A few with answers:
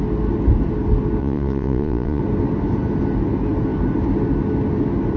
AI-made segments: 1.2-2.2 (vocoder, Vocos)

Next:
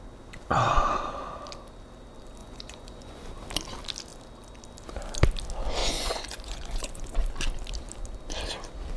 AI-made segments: 2.4-3.2 (vocoder, Vocos); 5.8-7.3

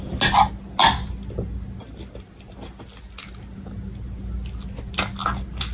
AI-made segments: none

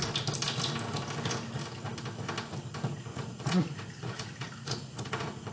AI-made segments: 3.1-5.5 (vocoder, Vocos)

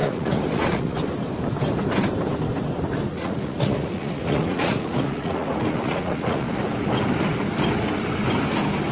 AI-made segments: 0.0-1.0 (vocoder, Vocos); 3.1-6.6